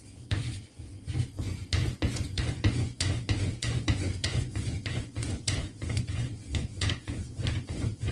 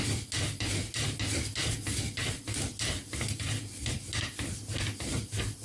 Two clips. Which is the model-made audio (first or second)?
first